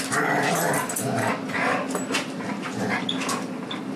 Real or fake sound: real